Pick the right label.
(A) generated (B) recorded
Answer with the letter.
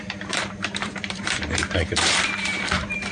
A